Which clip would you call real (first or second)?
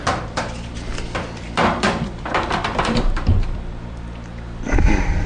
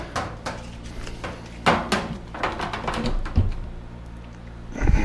second